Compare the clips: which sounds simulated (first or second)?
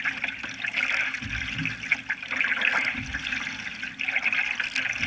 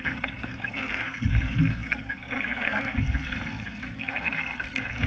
second